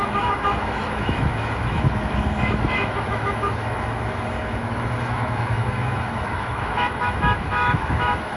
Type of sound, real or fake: fake